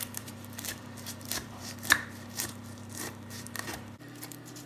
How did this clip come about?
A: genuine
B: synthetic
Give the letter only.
B